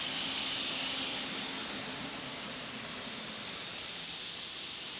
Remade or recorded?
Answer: recorded